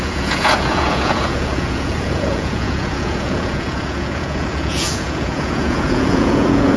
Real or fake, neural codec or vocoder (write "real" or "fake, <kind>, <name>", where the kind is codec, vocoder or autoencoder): fake, vocoder, Vocos